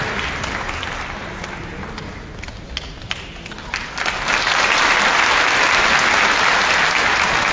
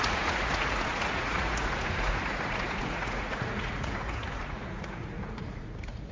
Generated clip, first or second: second